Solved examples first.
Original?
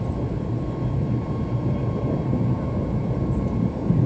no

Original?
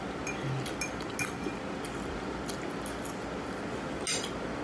yes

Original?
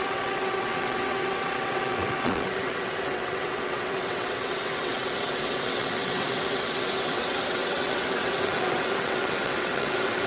no